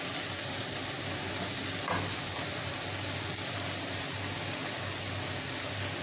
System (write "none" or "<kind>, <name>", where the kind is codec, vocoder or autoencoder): none